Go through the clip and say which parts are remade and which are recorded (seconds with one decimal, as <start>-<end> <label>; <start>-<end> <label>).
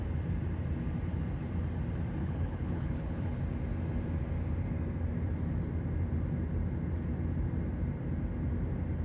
0.0-2.2 recorded; 2.2-3.4 remade; 3.4-9.0 recorded